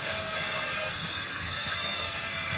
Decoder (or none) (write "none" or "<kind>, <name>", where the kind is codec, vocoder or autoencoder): codec, SNAC